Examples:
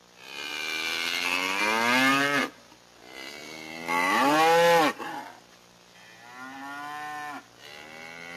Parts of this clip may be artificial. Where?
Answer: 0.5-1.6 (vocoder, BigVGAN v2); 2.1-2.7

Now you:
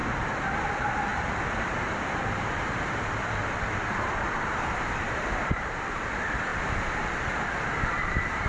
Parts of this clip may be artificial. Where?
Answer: 0.6-6.5 (vocoder, BigVGAN v2); 7.0-8.5

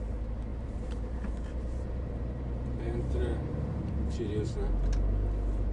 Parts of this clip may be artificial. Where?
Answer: 0.5-3.9 (vocoder, BigVGAN v2)